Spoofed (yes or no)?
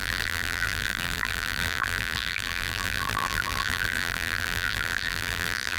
yes